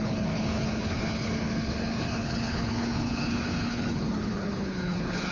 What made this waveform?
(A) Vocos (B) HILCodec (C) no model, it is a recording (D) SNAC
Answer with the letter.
B